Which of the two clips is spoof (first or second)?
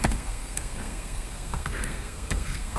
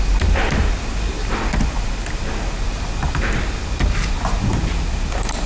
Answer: first